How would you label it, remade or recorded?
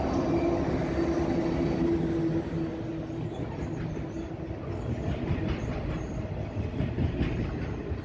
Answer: recorded